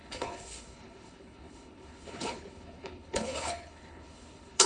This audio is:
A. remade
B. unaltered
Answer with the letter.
A